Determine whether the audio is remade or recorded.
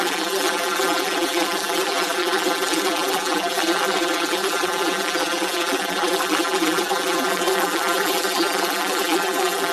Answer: remade